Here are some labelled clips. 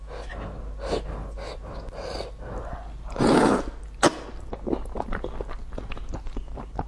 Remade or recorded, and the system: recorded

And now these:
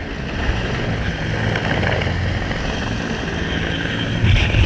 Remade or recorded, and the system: recorded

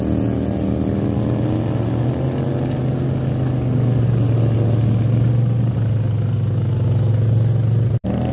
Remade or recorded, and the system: recorded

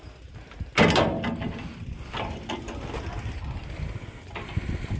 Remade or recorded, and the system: recorded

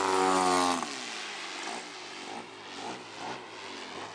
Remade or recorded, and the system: recorded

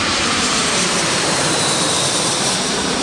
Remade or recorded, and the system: remade, vocoder, BigVGAN v2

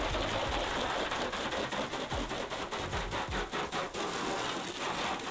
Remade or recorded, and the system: recorded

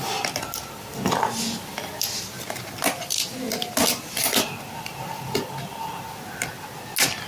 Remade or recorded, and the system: recorded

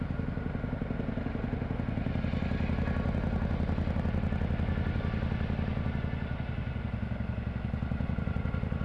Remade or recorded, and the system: recorded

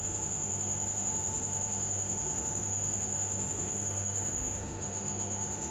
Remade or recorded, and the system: remade, autoencoder, DAC-VAE